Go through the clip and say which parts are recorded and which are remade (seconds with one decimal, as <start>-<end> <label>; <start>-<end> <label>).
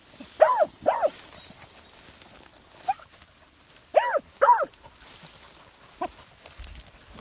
0.0-7.2 recorded